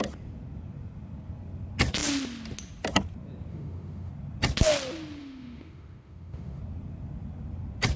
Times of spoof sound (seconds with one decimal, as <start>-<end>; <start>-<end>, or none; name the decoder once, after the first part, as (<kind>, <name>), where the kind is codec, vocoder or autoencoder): 3.5-4.1 (autoencoder, DAC-VAE); 5.2-6.6